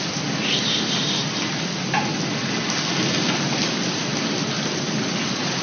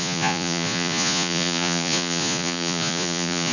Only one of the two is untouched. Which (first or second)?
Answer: first